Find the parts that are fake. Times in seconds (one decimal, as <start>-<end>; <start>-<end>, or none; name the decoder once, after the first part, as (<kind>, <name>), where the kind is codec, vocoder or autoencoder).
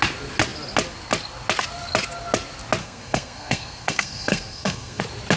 2.8-5.0 (codec, SNAC)